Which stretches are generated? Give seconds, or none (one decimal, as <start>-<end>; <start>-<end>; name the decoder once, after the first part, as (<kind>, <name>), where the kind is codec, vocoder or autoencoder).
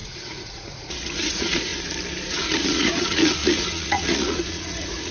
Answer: 0.0-1.7 (vocoder, Vocos); 2.3-5.1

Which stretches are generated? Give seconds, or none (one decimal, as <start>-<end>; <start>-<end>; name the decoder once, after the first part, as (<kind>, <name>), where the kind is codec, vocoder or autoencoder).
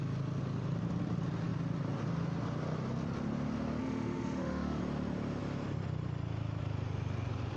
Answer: 3.8-4.8 (autoencoder, DAC-VAE)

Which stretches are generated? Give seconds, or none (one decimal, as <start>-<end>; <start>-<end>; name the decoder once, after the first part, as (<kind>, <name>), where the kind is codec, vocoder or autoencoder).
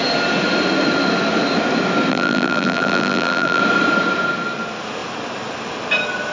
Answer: 2.1-3.6 (vocoder, BigVGAN v2)